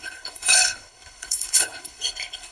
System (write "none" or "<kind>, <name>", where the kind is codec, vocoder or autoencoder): codec, HILCodec